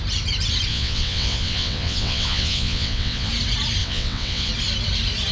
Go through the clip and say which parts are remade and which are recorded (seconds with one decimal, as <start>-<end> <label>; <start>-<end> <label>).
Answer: 0.0-0.7 recorded; 0.7-3.3 remade; 3.3-3.8 recorded; 3.8-4.5 remade; 4.5-5.3 recorded